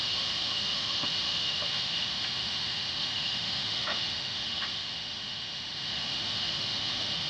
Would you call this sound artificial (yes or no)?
yes